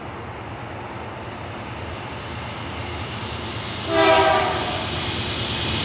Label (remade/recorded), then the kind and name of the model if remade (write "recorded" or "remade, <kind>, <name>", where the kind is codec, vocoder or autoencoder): recorded